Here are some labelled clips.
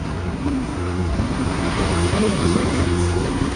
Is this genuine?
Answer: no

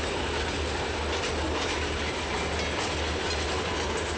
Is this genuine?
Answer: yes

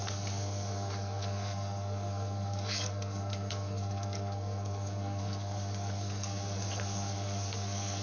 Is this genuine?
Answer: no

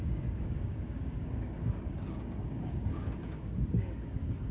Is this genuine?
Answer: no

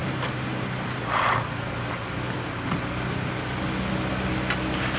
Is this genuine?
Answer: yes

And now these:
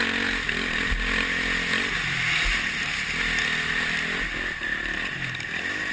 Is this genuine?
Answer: yes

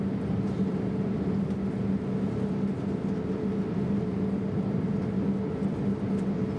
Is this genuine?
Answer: yes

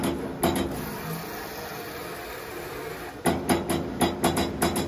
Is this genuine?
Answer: yes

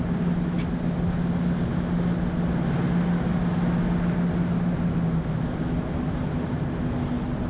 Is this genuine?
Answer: yes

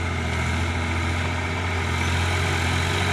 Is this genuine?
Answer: yes